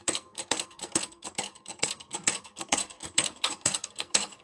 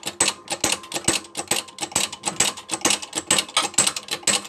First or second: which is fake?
first